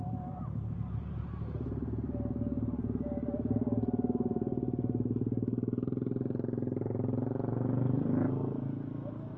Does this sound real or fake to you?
real